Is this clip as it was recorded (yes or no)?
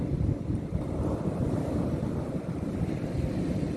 yes